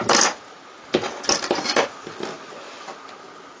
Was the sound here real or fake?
real